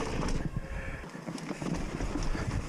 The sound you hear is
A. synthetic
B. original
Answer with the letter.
B